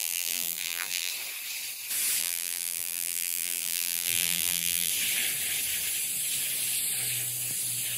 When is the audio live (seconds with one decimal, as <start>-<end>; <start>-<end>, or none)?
1.1-2.2; 4.9-8.0